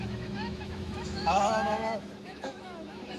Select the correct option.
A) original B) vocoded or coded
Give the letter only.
B